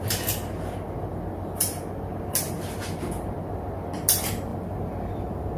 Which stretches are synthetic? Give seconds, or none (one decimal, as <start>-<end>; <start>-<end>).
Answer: none